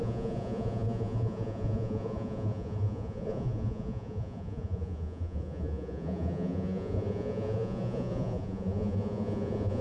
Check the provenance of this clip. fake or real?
fake